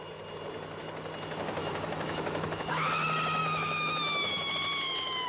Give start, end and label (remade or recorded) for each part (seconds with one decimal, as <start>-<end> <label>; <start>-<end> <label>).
0.0-1.6 recorded; 1.6-2.9 remade; 2.9-3.4 recorded; 3.4-4.5 remade; 4.5-5.3 recorded